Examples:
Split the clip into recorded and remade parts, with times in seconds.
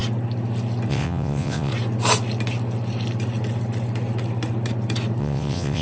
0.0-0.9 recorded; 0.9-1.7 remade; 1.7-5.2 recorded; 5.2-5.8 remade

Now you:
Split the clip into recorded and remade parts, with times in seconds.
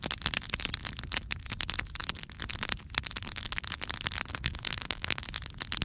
0.0-4.3 recorded; 4.3-5.2 remade; 5.2-5.8 recorded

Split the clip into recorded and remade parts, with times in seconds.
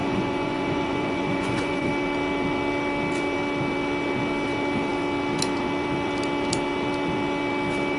0.0-1.9 remade; 1.9-8.0 recorded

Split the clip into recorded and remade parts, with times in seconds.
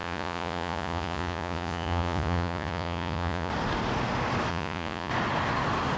0.0-3.5 remade; 3.5-4.5 recorded; 4.5-5.1 remade; 5.1-6.0 recorded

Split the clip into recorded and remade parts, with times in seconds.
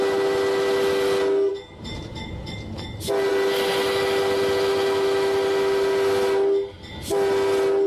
0.0-7.9 recorded